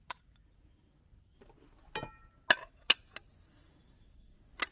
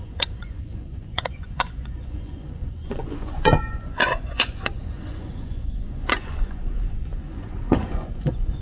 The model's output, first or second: second